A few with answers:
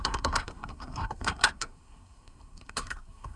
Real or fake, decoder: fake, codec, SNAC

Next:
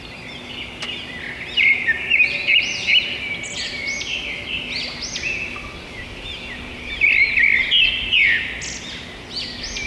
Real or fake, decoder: real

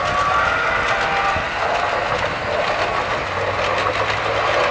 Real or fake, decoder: real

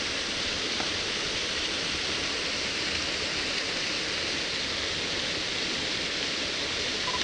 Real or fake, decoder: real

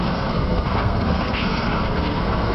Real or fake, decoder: fake, codec, SNAC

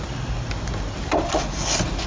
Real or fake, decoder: real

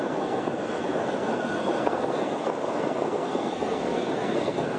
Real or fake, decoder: fake, codec, SNAC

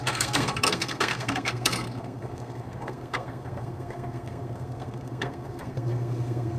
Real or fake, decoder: fake, codec, SNAC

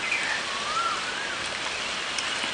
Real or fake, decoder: real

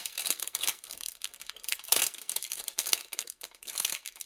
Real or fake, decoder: fake, codec, SNAC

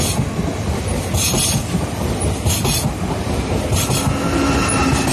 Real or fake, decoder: real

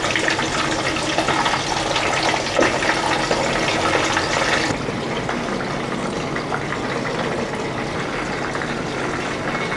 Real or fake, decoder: real